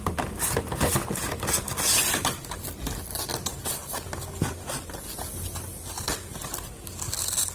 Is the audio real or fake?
real